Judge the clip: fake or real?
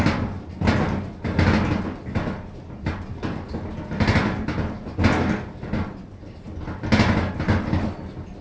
real